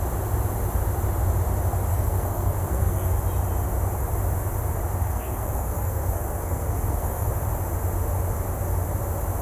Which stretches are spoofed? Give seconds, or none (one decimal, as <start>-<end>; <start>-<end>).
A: 1.9-3.2; 5.0-7.3